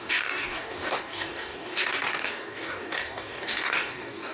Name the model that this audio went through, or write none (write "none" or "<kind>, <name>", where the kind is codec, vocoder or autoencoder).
codec, DAC